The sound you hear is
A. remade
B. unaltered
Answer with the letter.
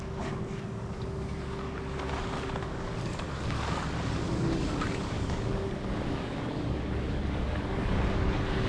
A